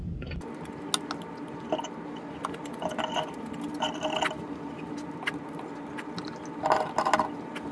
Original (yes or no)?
yes